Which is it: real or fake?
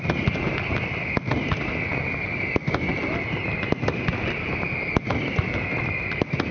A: real